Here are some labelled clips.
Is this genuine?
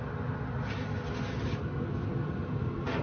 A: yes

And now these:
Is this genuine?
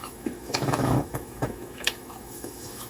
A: no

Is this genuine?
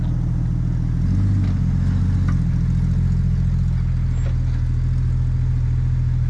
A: yes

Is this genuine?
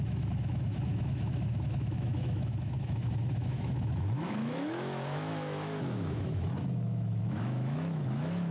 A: no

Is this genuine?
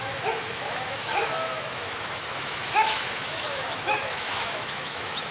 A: no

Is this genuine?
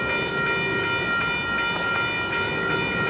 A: yes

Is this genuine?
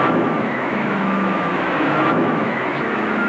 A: no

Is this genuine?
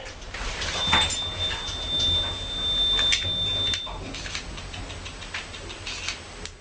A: yes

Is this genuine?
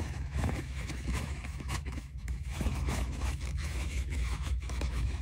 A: no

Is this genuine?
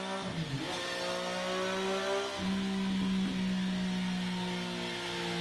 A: yes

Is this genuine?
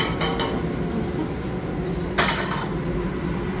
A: yes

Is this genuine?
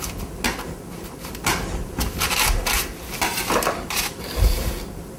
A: yes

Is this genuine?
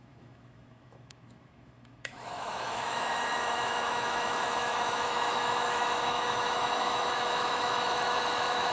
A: no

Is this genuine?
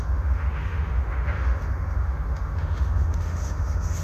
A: no